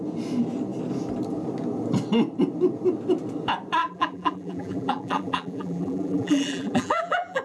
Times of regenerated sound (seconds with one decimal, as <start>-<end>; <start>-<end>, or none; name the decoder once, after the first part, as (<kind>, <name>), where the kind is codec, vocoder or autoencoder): 3.8-7.4 (vocoder, BigVGAN v2)